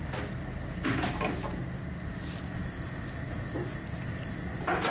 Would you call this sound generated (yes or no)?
no